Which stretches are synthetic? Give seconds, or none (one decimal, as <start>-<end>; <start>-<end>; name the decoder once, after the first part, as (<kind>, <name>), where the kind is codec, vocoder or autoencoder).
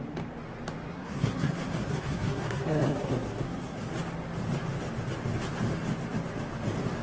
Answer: 0.9-3.9 (codec, SNAC)